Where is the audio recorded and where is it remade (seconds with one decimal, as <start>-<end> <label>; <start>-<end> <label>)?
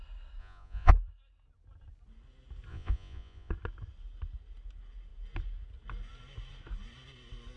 0.0-0.4 recorded; 0.4-0.9 remade; 0.9-2.7 recorded; 2.7-3.5 remade; 3.5-7.6 recorded